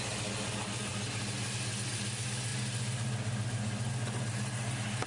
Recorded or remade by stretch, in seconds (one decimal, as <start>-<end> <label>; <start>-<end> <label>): 0.0-5.1 recorded